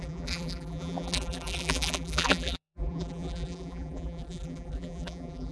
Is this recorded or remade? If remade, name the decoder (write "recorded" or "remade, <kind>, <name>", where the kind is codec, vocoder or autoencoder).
remade, vocoder, BigVGAN v2